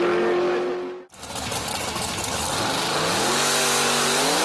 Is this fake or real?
real